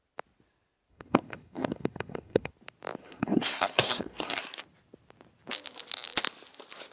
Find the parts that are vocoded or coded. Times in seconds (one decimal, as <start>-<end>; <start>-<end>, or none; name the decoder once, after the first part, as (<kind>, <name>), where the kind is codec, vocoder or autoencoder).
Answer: 0.9-2.5 (codec, SNAC); 3.0-4.4